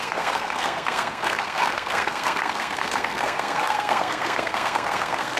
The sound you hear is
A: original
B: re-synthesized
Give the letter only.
B